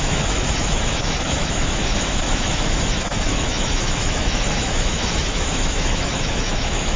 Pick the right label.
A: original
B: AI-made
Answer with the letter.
B